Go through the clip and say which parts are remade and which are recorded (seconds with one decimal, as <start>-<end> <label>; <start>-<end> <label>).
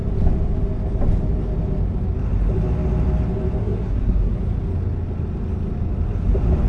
0.0-3.6 recorded; 3.6-4.4 remade; 4.4-6.7 recorded